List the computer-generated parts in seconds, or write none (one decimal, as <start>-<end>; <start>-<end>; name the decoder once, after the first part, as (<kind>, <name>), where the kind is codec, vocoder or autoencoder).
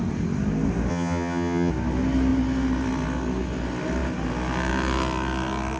0.9-1.7 (vocoder, HiFi-GAN)